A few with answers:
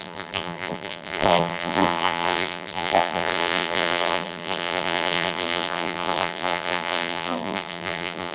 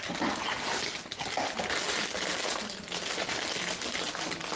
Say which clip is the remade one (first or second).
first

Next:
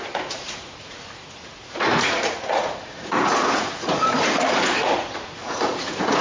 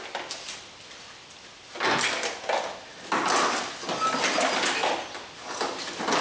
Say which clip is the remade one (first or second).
first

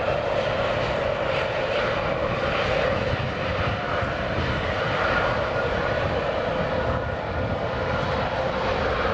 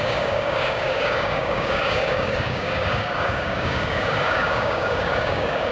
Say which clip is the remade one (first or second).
second